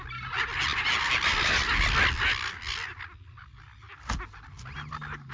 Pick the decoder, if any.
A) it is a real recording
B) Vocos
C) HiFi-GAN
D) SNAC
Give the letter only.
A